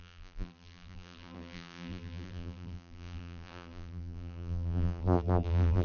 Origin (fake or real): fake